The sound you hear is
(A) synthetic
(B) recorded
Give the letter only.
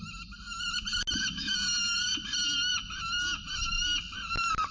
B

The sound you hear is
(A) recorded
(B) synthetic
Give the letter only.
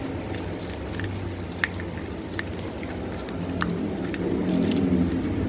A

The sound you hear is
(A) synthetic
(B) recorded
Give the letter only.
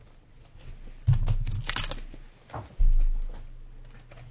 B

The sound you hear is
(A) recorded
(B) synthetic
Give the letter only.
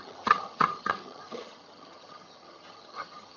B